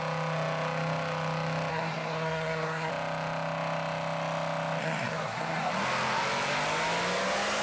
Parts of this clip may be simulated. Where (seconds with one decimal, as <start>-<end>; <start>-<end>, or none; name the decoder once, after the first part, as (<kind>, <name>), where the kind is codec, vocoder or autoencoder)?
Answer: 1.7-2.9 (codec, SNAC); 4.8-5.7